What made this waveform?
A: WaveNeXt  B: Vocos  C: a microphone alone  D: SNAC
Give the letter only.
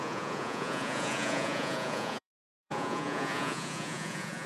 B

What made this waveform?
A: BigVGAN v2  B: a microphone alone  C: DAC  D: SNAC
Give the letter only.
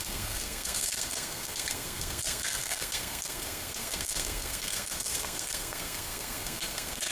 D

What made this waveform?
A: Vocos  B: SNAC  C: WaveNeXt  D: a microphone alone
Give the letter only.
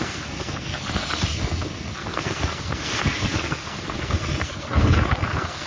B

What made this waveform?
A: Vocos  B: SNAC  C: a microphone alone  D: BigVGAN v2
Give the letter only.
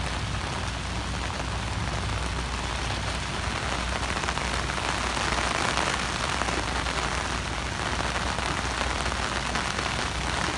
C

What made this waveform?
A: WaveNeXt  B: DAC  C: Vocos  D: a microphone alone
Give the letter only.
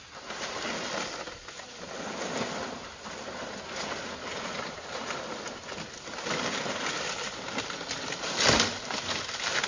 D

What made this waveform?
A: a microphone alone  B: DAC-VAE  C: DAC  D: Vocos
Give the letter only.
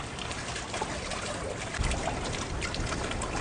A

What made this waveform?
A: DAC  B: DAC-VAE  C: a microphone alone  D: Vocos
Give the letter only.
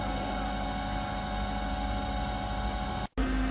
C